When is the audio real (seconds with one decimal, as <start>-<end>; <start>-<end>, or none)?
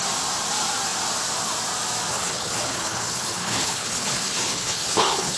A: 0.0-2.1